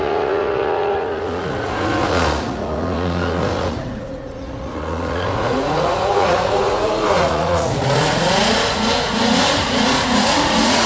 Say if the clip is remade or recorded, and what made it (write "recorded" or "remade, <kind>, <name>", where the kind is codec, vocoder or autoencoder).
remade, vocoder, Vocos